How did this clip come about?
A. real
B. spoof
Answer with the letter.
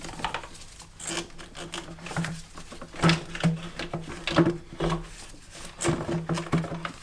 A